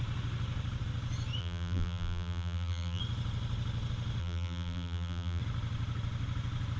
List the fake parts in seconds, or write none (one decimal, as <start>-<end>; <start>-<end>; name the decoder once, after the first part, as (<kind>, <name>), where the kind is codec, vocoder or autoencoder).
1.4-3.0 (vocoder, BigVGAN v2); 4.2-5.4